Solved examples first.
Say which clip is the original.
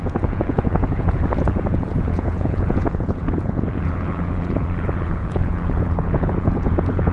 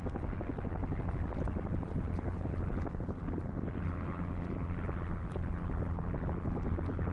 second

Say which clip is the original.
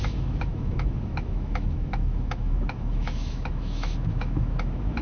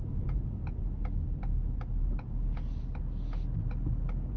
second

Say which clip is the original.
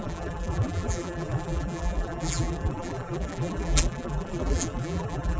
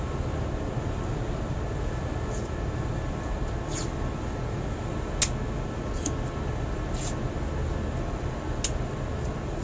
second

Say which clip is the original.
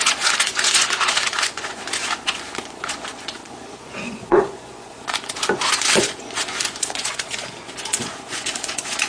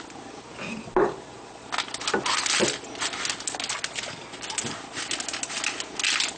second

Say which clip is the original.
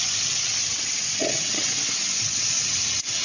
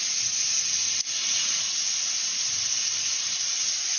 second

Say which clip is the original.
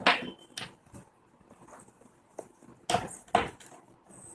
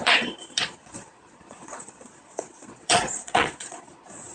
first